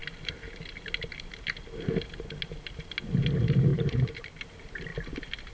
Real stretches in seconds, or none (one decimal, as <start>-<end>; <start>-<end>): 0.0-3.7; 4.4-5.5